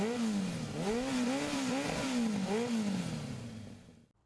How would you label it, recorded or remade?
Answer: recorded